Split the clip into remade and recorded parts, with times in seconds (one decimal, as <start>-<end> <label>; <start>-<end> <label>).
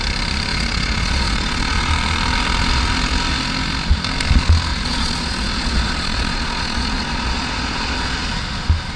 0.0-0.5 recorded; 0.5-1.9 remade; 1.9-4.7 recorded; 4.7-8.3 remade; 8.3-9.0 recorded